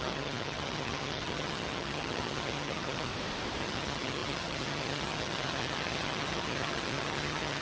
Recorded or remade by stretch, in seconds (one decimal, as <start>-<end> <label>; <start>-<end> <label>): 0.0-3.1 remade; 3.1-3.6 recorded; 3.6-7.6 remade